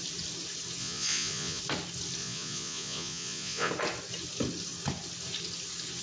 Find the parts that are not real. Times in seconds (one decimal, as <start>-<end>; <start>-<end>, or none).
0.8-1.6; 2.2-3.7